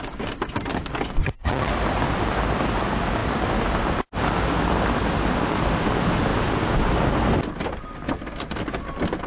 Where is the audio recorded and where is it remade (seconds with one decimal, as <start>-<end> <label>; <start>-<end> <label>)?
0.0-1.2 recorded; 1.2-1.7 remade; 1.7-9.3 recorded